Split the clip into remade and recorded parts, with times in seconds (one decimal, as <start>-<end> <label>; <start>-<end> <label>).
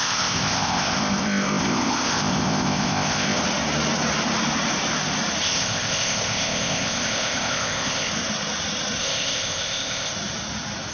0.0-3.4 remade; 3.4-5.4 recorded; 5.4-8.1 remade; 8.1-9.0 recorded; 9.0-10.1 remade; 10.1-10.9 recorded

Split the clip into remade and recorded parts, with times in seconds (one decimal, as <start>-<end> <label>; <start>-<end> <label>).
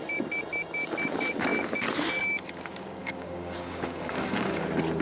0.0-3.0 recorded; 3.0-4.6 remade; 4.6-5.0 recorded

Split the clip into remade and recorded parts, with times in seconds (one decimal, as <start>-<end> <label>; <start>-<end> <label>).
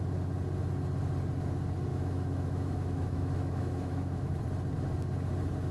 0.0-1.9 recorded; 1.9-4.4 remade; 4.4-5.7 recorded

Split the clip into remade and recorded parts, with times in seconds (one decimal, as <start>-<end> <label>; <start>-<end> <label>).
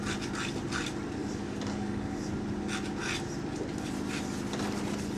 0.0-1.2 recorded; 1.2-2.3 remade; 2.3-5.2 recorded